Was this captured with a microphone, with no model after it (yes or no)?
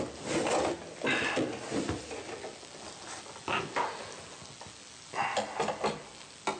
yes